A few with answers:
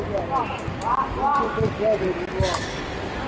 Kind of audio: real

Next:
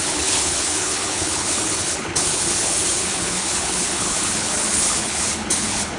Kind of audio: fake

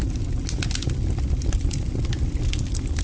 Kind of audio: real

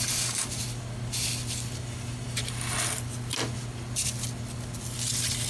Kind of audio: real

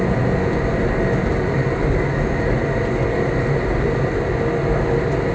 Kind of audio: real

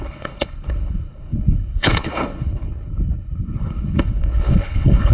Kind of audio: fake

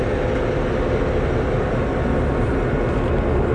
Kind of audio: real